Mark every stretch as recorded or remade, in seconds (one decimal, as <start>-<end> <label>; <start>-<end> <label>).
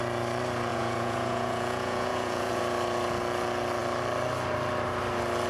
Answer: 0.0-0.7 recorded; 0.7-2.6 remade; 2.6-5.5 recorded